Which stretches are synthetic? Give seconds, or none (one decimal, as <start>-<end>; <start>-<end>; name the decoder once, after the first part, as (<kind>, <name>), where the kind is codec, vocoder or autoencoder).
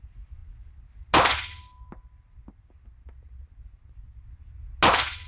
none